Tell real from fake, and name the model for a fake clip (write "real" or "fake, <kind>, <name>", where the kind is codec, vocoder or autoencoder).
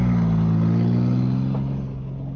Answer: real